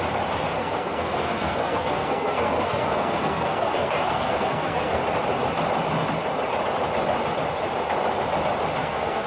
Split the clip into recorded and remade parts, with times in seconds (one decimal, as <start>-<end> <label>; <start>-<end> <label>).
0.0-0.6 recorded; 0.6-5.0 remade; 5.0-8.8 recorded; 8.8-9.3 remade